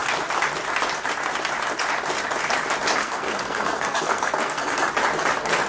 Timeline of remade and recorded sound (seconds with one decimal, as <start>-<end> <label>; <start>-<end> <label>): 0.0-3.0 recorded; 3.0-4.9 remade; 4.9-5.7 recorded